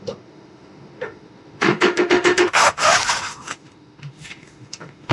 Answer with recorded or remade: remade